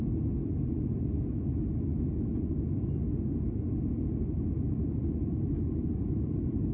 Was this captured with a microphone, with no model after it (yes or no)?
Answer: yes